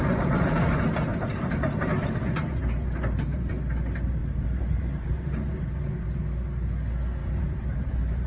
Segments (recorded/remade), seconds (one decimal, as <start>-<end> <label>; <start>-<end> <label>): 0.0-1.1 recorded; 1.1-3.5 remade; 3.5-4.2 recorded; 4.2-6.2 remade; 6.2-7.2 recorded; 7.2-7.9 remade; 7.9-8.3 recorded